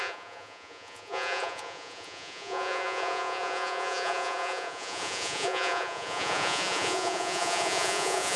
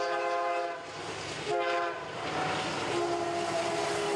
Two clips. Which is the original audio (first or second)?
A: second